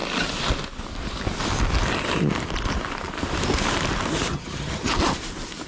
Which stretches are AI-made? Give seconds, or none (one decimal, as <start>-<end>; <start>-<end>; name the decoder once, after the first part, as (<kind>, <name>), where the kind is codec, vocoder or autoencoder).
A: 4.3-4.9 (vocoder, HiFi-GAN)